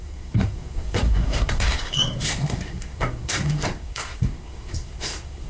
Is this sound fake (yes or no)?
yes